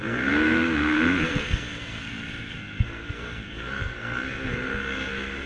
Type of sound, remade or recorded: remade